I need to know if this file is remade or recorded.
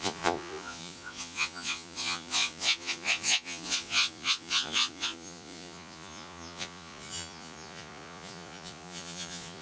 remade